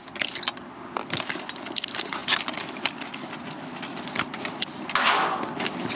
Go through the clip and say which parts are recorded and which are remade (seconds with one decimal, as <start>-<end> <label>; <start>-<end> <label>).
0.0-6.0 recorded